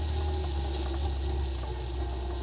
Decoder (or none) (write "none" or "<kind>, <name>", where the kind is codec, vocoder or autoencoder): none